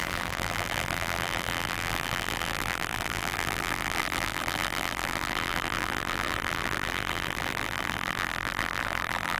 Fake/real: fake